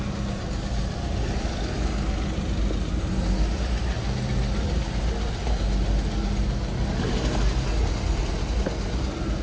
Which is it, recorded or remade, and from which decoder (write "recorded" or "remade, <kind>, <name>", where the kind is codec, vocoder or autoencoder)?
recorded